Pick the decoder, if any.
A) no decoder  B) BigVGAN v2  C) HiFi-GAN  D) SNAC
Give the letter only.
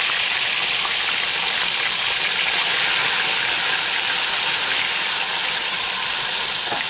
A